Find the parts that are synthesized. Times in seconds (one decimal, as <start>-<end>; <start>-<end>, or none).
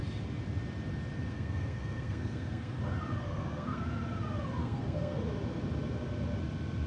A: 1.3-2.8; 3.2-3.8; 4.6-5.2